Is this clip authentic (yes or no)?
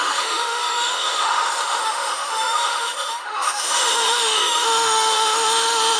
no